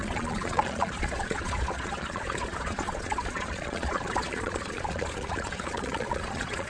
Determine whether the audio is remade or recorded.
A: remade